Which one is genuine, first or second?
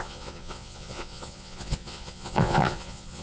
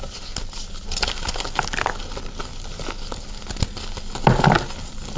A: second